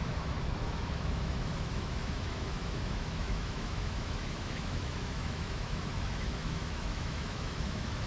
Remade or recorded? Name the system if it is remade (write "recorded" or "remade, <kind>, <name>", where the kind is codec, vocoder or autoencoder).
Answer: remade, autoencoder, DAC-VAE